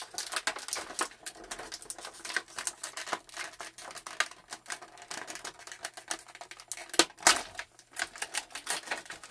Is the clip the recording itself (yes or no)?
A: yes